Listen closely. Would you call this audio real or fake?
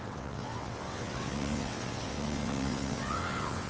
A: fake